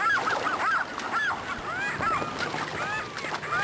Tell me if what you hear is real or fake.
real